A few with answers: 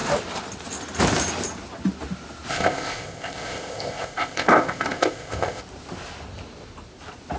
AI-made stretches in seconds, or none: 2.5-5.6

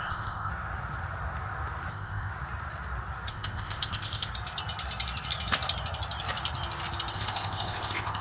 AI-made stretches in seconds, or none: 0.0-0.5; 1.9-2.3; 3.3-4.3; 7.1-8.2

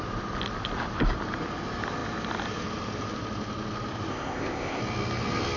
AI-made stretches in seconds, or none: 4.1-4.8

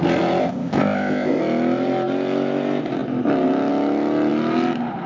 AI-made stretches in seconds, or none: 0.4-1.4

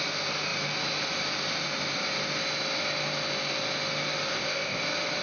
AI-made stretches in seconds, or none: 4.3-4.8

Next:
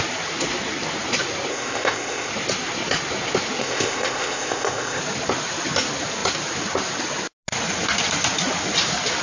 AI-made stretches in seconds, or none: 1.5-2.3; 3.6-5.0

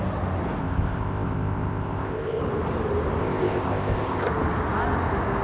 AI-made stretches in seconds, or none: 0.6-2.4; 3.2-4.3

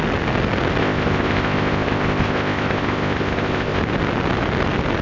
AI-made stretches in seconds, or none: 0.8-3.8